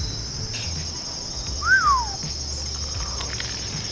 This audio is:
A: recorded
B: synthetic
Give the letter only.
A